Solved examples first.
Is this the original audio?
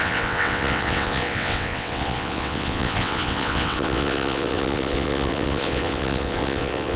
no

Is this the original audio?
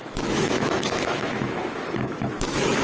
no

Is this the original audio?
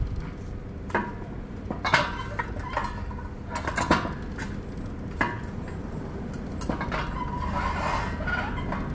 yes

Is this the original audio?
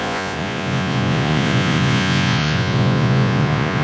no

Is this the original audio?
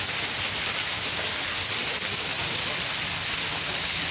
yes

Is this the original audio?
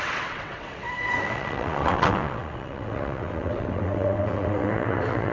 no